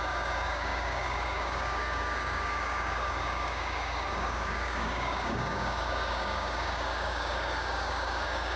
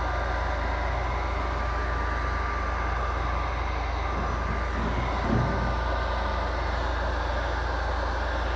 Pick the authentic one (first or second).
second